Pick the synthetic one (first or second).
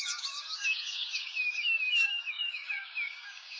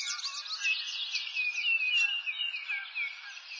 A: first